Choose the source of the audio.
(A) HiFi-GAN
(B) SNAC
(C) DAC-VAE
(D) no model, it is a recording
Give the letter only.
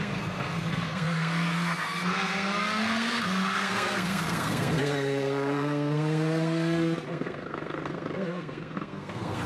B